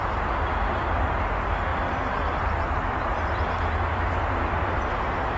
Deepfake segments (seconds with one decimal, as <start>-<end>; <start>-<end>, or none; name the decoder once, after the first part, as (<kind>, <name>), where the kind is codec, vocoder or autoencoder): 1.7-4.9 (vocoder, BigVGAN v2)